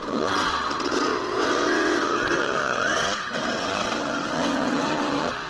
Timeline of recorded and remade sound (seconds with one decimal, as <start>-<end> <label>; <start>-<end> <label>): 0.0-5.5 remade